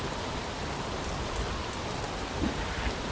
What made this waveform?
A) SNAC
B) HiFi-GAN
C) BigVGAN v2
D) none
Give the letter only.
D